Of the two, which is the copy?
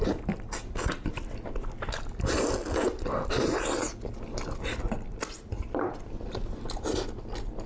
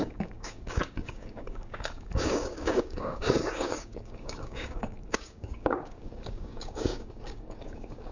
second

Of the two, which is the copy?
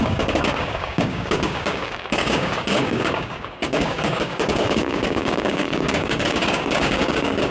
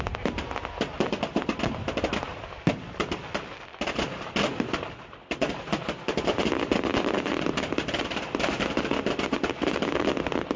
first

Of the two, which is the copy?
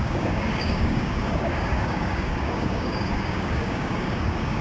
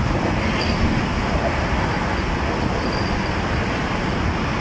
first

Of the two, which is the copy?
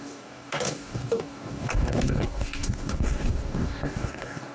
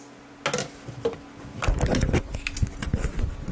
first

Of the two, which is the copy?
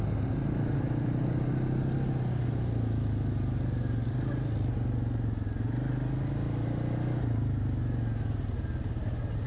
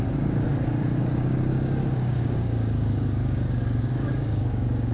second